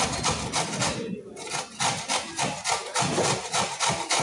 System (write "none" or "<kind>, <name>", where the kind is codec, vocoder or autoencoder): none